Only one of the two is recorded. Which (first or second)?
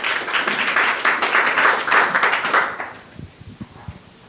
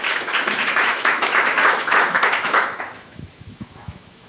first